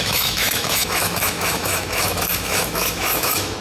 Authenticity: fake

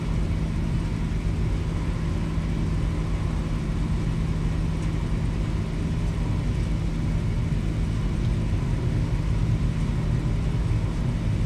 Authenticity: real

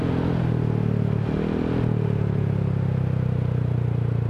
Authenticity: real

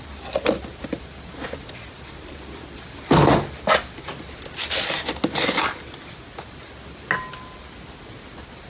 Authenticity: real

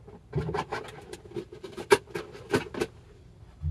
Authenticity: real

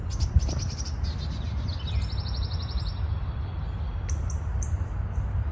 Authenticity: real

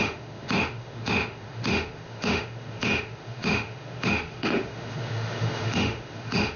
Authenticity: fake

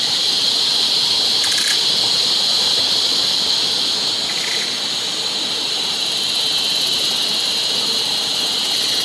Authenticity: real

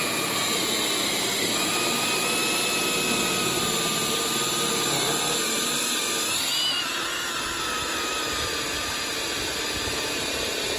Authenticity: real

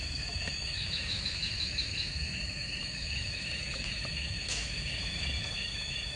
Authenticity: fake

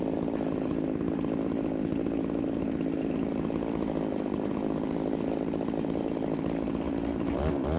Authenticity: real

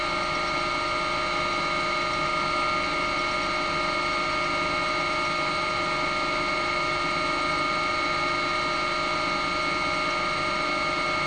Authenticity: real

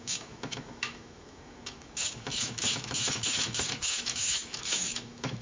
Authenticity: fake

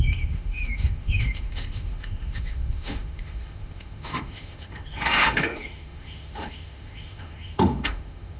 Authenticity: fake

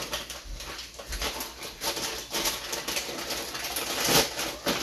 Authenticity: real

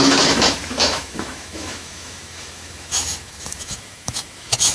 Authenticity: fake